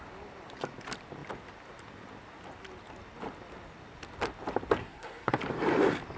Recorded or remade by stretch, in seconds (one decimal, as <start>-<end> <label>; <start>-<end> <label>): 0.0-4.8 recorded; 4.8-5.3 remade; 5.3-6.2 recorded